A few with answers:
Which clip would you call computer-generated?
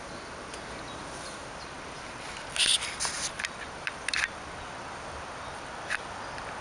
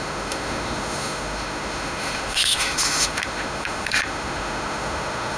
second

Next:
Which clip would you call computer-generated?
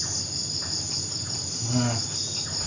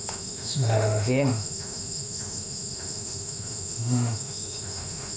second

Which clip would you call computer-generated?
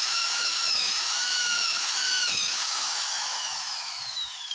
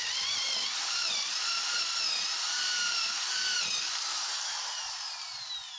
first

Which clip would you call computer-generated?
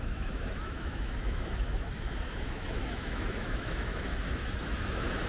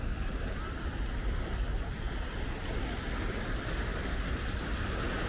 first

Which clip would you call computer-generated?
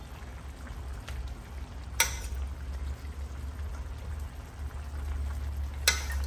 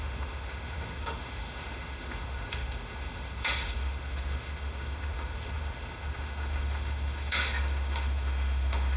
second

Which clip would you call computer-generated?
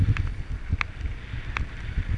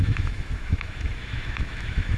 second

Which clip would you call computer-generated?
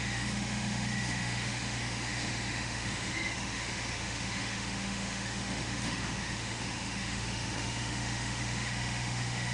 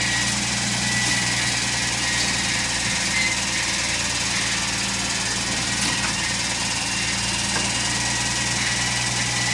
first